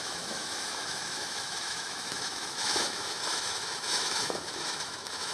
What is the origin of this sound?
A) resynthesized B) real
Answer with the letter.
A